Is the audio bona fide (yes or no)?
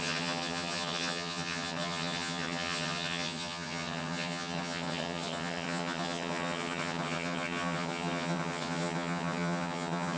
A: no